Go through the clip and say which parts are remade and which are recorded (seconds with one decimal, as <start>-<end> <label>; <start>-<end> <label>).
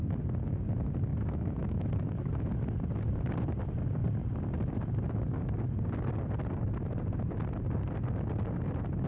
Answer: 0.0-1.1 recorded; 1.1-2.6 remade; 2.6-9.1 recorded